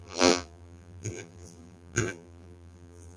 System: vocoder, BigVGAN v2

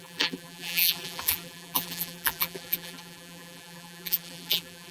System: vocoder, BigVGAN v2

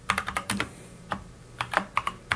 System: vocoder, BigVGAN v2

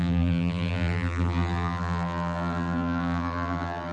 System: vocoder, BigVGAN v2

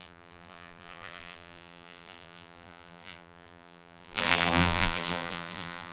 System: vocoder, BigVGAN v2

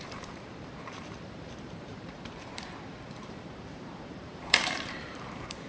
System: vocoder, BigVGAN v2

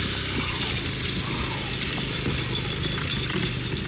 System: vocoder, BigVGAN v2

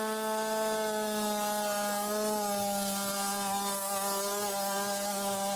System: none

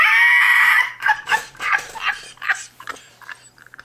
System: vocoder, BigVGAN v2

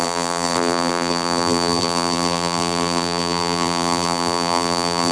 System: vocoder, BigVGAN v2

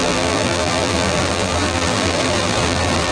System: vocoder, BigVGAN v2